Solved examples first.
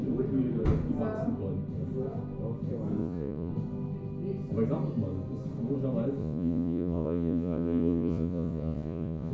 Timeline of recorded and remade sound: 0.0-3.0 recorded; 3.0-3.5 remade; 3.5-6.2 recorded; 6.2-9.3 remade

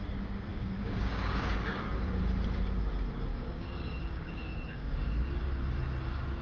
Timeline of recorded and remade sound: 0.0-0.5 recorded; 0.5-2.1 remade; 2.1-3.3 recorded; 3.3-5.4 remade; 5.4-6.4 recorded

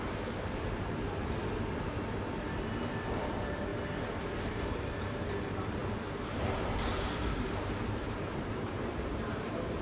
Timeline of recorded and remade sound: 0.0-3.7 remade; 3.7-4.2 recorded; 4.2-9.8 remade

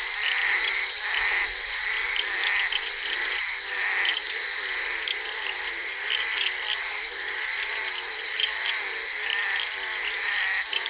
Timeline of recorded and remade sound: 0.0-8.6 remade; 8.6-9.7 recorded; 9.7-10.9 remade

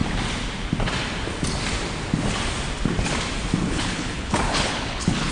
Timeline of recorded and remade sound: 0.0-3.6 recorded; 3.6-5.3 remade

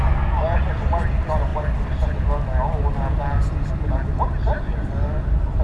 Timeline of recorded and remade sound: 0.0-5.6 recorded